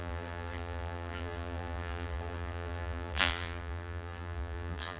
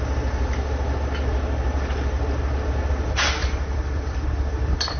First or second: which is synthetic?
first